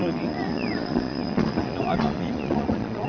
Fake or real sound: fake